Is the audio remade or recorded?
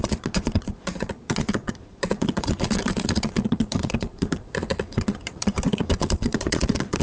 remade